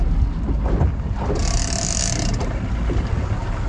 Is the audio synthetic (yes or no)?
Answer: no